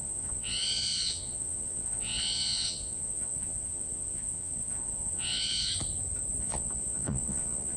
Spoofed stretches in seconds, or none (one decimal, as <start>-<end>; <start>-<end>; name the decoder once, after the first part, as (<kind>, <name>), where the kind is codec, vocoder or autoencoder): 0.0-5.7 (vocoder, Vocos); 6.4-7.8